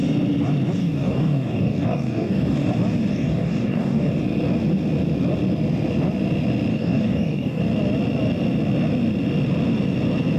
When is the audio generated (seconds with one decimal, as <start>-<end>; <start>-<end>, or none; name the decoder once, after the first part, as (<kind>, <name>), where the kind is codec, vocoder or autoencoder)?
0.8-2.7 (codec, DAC); 3.1-4.1; 6.7-7.6